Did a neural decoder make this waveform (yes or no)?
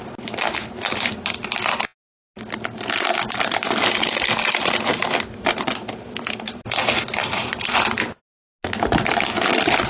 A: no